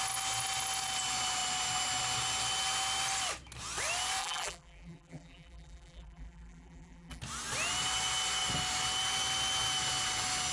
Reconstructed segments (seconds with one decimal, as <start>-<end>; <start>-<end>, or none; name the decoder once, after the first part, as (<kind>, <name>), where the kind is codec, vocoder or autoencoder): 4.2-7.2 (vocoder, BigVGAN v2)